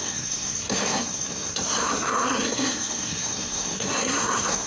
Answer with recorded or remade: remade